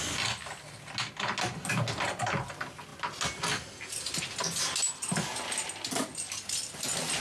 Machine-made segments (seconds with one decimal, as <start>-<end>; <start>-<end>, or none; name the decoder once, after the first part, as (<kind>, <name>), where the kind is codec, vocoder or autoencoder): none